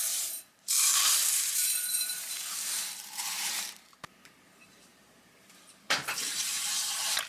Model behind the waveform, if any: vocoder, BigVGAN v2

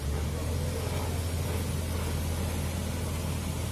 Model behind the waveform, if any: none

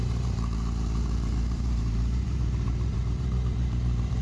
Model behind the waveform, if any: vocoder, BigVGAN v2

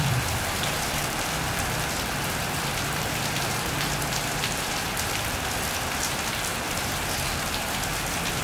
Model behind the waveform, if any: vocoder, BigVGAN v2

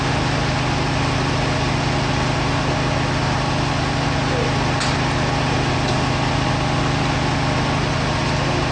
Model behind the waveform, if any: none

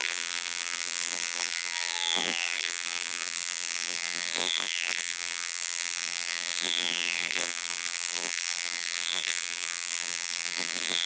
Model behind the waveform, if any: vocoder, BigVGAN v2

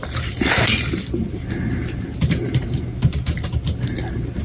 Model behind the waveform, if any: vocoder, BigVGAN v2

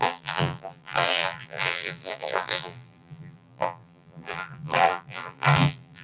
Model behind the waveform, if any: vocoder, BigVGAN v2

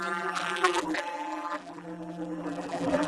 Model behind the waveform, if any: vocoder, BigVGAN v2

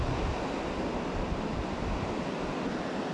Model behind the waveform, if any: none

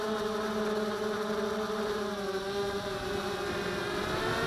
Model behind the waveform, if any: none